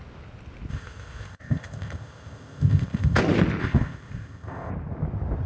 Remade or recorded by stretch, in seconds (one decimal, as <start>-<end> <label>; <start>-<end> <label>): 0.0-0.7 recorded; 0.7-3.2 remade; 3.2-3.6 recorded; 3.6-4.7 remade; 4.7-5.5 recorded